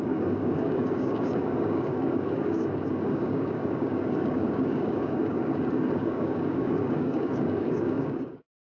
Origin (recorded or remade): remade